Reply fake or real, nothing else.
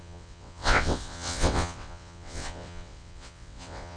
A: fake